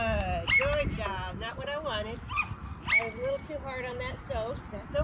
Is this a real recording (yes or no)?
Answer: yes